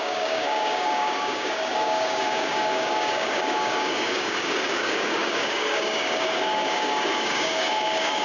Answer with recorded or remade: remade